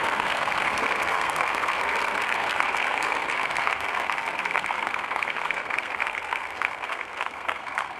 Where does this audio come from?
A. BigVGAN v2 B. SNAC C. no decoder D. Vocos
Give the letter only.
B